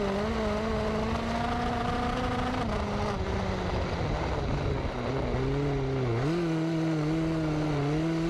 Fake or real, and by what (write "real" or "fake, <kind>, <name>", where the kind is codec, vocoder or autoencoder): real